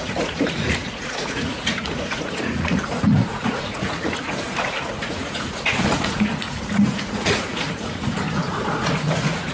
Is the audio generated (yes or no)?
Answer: yes